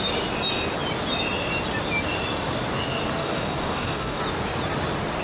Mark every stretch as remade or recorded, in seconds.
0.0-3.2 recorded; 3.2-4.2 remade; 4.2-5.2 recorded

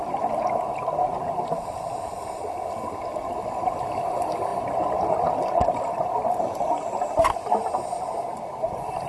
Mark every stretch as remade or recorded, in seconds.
0.0-9.1 recorded

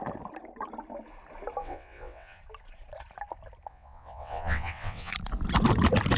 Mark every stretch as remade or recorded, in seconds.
0.0-1.6 recorded; 1.6-2.4 remade; 2.4-3.7 recorded; 3.7-5.1 remade; 5.1-6.2 recorded

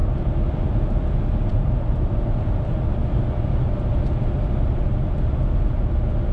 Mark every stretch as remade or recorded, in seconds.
0.0-1.5 recorded; 1.5-2.7 remade; 2.7-6.3 recorded